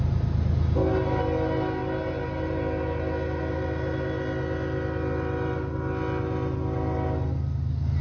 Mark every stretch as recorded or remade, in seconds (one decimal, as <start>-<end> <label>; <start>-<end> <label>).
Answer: 0.0-8.0 recorded